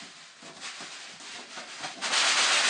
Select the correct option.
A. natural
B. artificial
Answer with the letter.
A